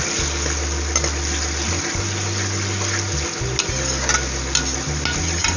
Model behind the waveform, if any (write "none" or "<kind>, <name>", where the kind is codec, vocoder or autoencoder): none